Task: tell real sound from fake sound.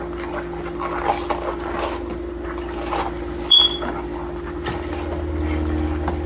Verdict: real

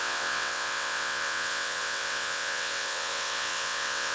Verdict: fake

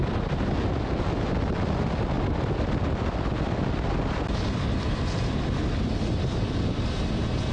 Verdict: real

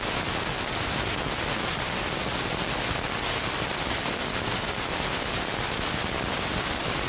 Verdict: real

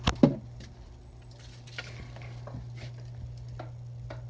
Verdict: real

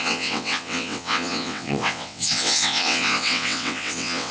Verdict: fake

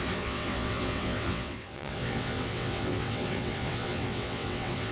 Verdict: fake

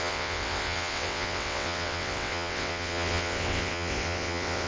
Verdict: fake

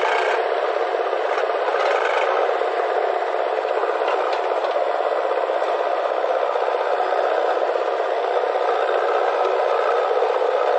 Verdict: real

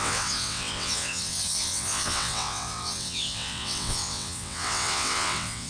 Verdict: fake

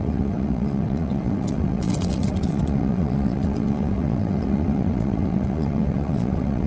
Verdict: fake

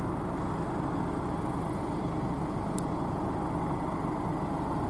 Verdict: real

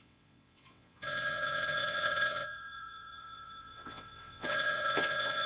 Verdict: fake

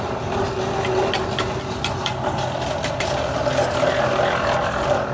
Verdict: real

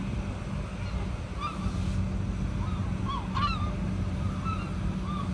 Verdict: real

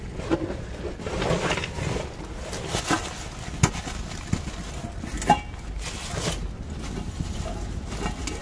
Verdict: real